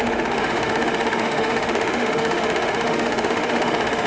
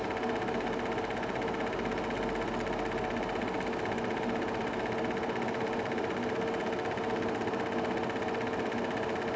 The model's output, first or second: first